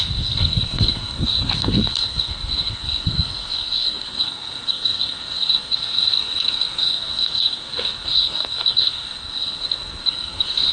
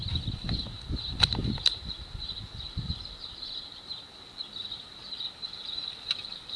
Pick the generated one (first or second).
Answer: first